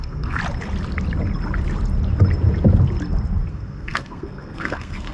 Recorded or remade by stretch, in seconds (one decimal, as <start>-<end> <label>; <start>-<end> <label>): 0.0-0.4 remade; 0.4-3.5 recorded; 3.5-5.1 remade